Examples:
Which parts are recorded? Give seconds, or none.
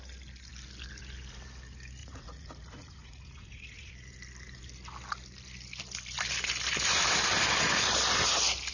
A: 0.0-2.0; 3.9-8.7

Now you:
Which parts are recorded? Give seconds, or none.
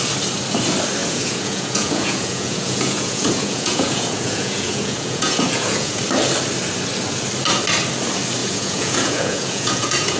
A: 0.0-1.0; 6.0-8.4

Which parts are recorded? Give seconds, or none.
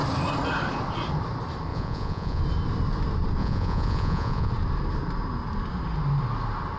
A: 0.0-1.7; 2.4-3.4; 4.5-6.8